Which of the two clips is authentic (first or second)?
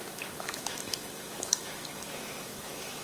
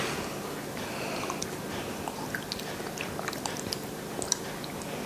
second